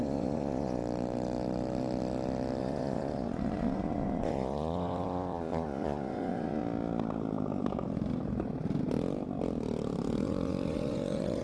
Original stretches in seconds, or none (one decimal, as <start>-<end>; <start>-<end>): 0.8-2.6; 6.6-10.2